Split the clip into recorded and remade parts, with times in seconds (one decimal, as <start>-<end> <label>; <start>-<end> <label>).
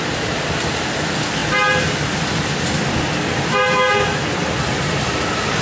0.0-5.6 recorded